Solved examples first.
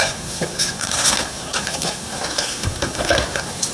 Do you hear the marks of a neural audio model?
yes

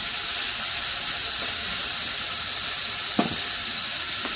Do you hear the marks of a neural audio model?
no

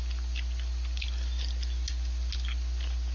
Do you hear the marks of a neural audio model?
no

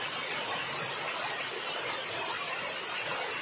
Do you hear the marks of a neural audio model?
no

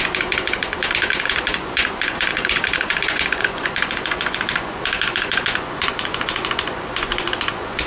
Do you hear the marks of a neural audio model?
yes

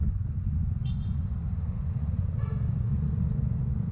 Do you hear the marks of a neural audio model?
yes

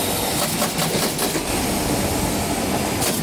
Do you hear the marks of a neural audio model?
no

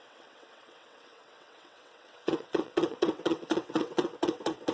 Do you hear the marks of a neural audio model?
yes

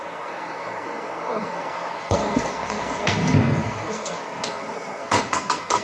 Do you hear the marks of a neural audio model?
yes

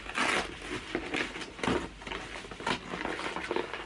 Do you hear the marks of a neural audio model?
no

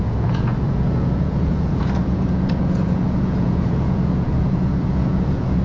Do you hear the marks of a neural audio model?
yes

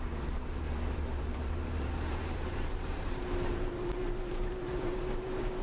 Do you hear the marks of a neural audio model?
yes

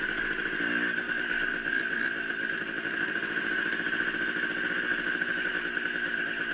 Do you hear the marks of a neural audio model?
no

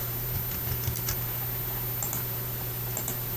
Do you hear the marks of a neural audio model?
no